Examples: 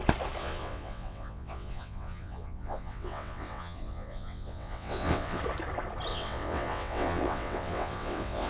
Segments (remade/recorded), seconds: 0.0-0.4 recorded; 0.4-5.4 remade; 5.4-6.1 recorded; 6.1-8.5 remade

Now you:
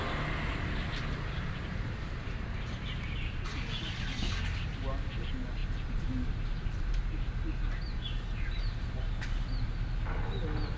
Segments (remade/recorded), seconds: 0.0-10.8 recorded

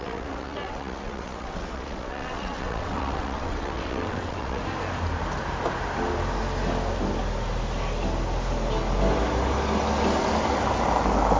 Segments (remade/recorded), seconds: 0.0-4.6 remade; 4.6-11.4 recorded

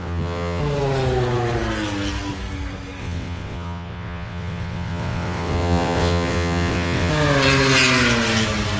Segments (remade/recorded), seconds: 0.0-0.6 remade; 0.6-3.0 recorded; 3.0-7.1 remade; 7.1-8.8 recorded

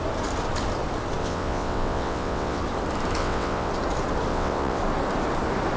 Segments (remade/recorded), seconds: 0.0-1.2 recorded; 1.2-2.6 remade; 2.6-3.2 recorded; 3.2-3.7 remade; 3.7-4.3 recorded; 4.3-4.8 remade; 4.8-5.8 recorded

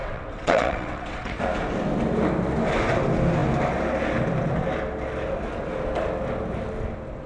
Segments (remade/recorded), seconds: 0.0-1.4 remade; 1.4-7.3 recorded

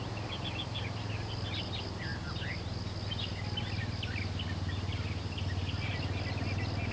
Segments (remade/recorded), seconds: 0.0-6.9 recorded

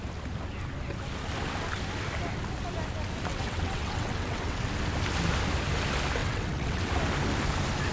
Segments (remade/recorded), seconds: 0.0-3.3 recorded; 3.3-4.7 remade; 4.7-6.2 recorded; 6.2-6.9 remade; 6.9-7.9 recorded